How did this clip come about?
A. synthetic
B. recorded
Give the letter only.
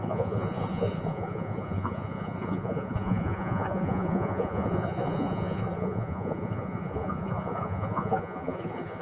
A